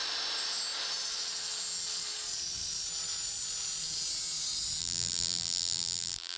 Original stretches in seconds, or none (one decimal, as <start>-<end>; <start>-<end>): 0.0-4.8